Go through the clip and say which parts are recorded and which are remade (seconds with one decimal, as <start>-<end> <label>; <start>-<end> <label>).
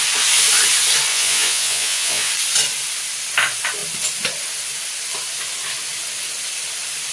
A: 0.0-1.1 recorded; 1.1-2.3 remade; 2.3-7.1 recorded